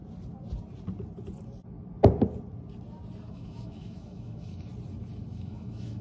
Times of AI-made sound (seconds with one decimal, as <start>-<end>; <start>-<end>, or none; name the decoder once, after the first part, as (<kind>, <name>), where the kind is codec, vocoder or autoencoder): 3.3-4.7 (autoencoder, DAC-VAE); 5.3-6.0